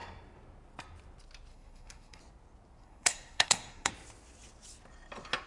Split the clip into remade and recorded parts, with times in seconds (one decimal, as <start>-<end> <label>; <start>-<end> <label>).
0.0-1.5 recorded; 1.5-2.2 remade; 2.2-2.8 recorded; 2.8-3.9 remade; 3.9-5.5 recorded

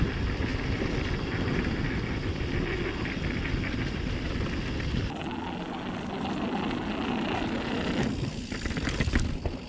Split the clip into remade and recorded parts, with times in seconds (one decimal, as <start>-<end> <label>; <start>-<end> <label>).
0.0-9.7 recorded

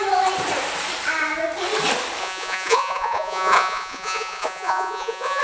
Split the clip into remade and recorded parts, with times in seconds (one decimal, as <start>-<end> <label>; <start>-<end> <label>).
0.0-2.2 recorded; 2.2-5.4 remade

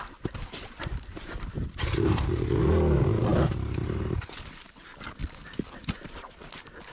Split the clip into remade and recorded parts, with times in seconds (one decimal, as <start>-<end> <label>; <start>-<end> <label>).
0.0-6.9 recorded

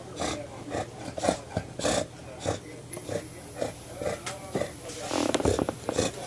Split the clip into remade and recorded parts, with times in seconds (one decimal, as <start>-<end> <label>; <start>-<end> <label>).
0.0-6.3 recorded